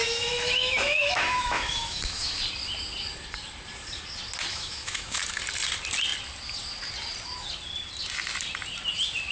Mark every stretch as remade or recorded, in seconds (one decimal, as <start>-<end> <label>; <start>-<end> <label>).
0.0-2.4 remade; 2.4-4.5 recorded; 4.5-5.2 remade; 5.2-9.3 recorded